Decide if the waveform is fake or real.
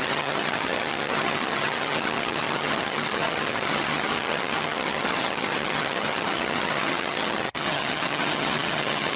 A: fake